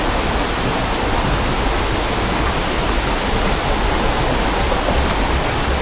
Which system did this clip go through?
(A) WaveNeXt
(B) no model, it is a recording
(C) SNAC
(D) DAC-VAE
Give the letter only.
B